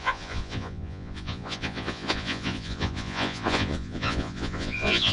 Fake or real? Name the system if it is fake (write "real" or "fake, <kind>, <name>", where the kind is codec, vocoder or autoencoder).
fake, vocoder, Vocos